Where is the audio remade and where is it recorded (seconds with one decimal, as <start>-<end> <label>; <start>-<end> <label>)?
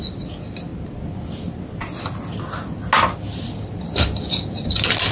0.0-5.1 recorded